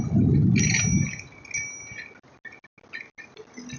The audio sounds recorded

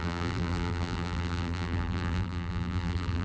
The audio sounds remade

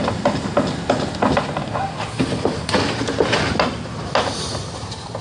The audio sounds recorded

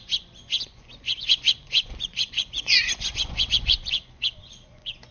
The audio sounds remade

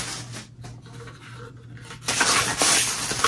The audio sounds recorded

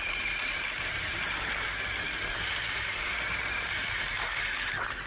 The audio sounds recorded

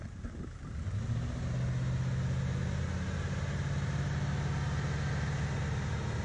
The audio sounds recorded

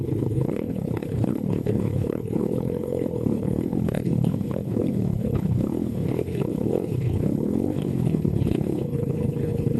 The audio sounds remade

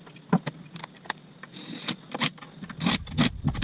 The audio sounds recorded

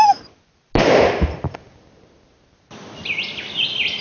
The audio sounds recorded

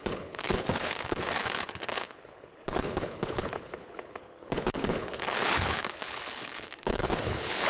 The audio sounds remade